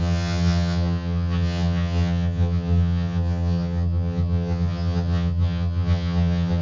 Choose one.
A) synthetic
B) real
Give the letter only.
A